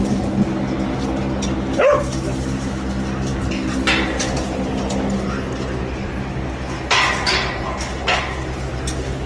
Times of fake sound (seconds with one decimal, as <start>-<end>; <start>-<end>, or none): none